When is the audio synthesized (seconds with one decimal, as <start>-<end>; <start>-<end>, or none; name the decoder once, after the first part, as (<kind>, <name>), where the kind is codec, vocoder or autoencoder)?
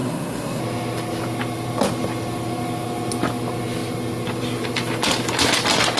0.0-0.6 (codec, SNAC)